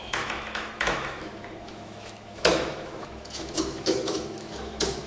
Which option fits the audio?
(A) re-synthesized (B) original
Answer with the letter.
A